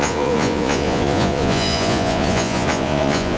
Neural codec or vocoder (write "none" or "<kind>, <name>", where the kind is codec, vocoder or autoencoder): vocoder, Vocos